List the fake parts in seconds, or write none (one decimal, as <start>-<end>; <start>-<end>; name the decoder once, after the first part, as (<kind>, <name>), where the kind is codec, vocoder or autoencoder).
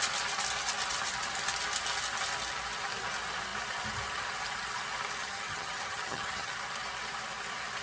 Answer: 5.2-6.5 (vocoder, HiFi-GAN)